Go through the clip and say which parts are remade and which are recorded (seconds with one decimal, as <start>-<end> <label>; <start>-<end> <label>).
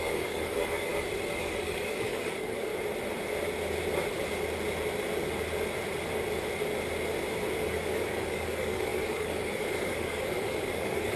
0.0-0.9 remade; 0.9-1.4 recorded; 1.4-2.7 remade; 2.7-7.6 recorded; 7.6-11.2 remade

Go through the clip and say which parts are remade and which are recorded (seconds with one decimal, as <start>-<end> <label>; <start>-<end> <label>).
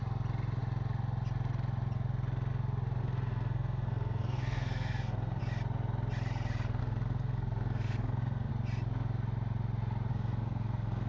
0.0-3.0 recorded; 3.0-5.4 remade; 5.4-6.8 recorded; 6.8-8.5 remade; 8.5-10.1 recorded; 10.1-11.1 remade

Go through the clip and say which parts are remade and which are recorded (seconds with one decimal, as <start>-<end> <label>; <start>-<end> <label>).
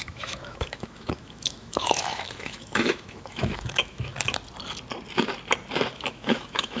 0.0-4.1 remade; 4.1-5.9 recorded; 5.9-6.8 remade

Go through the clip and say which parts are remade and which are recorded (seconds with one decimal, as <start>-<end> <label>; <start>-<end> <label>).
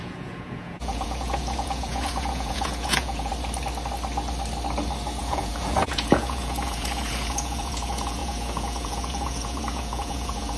0.0-3.3 remade; 3.3-5.2 recorded; 5.2-10.6 remade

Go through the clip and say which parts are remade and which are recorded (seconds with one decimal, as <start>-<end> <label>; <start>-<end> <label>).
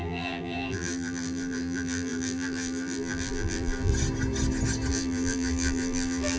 0.0-3.9 remade; 3.9-4.9 recorded; 4.9-6.4 remade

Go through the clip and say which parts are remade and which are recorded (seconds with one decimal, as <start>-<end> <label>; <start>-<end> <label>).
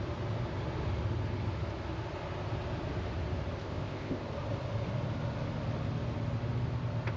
0.0-3.6 recorded; 3.6-4.2 remade; 4.2-7.2 recorded